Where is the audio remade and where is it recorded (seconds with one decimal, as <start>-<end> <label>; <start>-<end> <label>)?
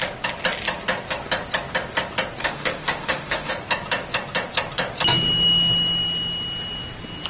0.0-2.4 recorded; 2.4-3.5 remade; 3.5-7.3 recorded